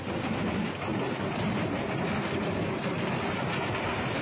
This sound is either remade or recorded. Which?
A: recorded